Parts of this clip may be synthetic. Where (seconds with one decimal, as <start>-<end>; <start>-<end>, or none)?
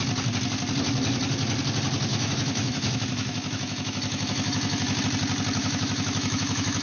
2.1-5.0; 5.6-6.8